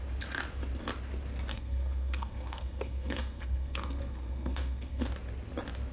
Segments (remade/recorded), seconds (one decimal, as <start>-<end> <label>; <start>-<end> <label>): 0.0-1.5 recorded; 1.5-5.0 remade; 5.0-5.9 recorded